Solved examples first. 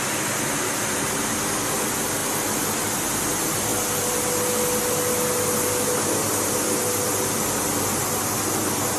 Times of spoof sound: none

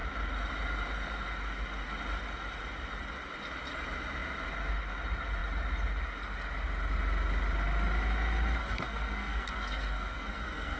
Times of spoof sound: 8.6-10.8 (codec, SNAC)

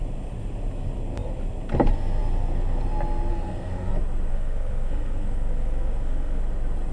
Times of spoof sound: 3.3-3.9 (codec, SNAC); 4.3-6.4

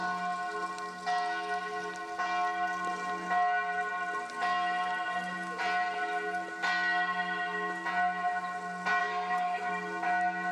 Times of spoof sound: 9.0-9.7 (codec, SNAC)

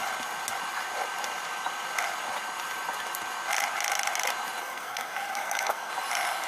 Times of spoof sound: 4.6-5.9 (codec, SNAC)

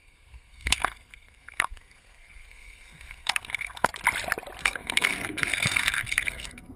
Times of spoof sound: 0.0-3.9 (codec, SNAC); 4.6-6.8